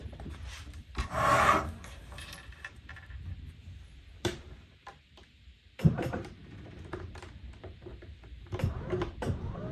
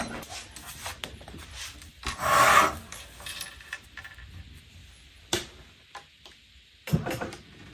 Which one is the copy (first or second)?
first